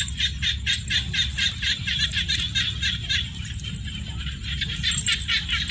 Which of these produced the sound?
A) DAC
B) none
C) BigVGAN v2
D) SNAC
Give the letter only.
B